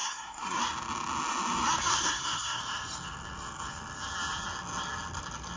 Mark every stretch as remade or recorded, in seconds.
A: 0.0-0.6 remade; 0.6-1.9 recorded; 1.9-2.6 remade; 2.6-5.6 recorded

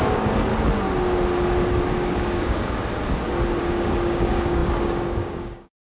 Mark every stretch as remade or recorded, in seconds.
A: 0.0-0.5 remade; 0.5-1.9 recorded; 1.9-2.8 remade; 2.8-3.6 recorded; 3.6-5.8 remade

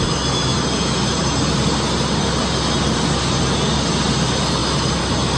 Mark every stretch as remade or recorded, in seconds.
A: 0.0-5.4 recorded

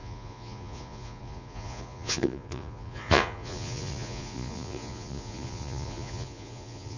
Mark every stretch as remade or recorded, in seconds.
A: 0.0-7.0 remade

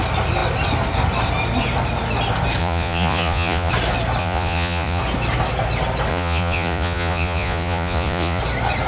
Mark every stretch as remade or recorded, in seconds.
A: 0.0-2.6 recorded; 2.6-3.7 remade; 3.7-4.2 recorded; 4.2-5.0 remade; 5.0-6.1 recorded; 6.1-8.4 remade; 8.4-8.9 recorded

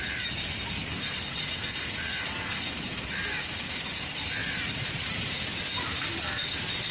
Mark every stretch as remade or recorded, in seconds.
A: 0.0-4.4 recorded; 4.4-5.6 remade; 5.6-6.9 recorded

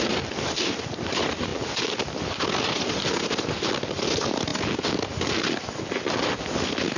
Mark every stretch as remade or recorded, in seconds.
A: 0.0-7.0 recorded